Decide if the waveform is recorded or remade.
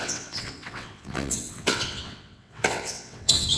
remade